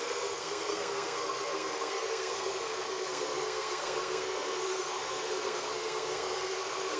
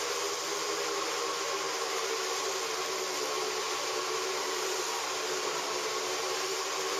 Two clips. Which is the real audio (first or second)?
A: second